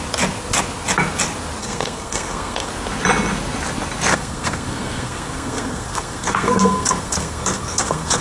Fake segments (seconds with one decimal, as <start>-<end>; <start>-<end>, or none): 1.6-2.7; 4.1-8.2